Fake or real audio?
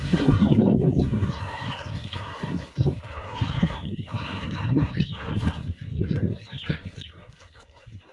fake